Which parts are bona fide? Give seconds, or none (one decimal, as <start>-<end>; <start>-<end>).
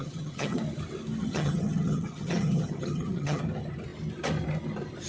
0.6-1.2; 3.4-5.1